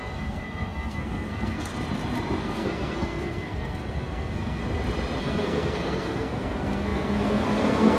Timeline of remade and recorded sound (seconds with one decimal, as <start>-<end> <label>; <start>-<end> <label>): 0.0-1.7 remade; 1.7-2.4 recorded; 2.4-4.6 remade; 4.6-5.2 recorded; 5.2-8.0 remade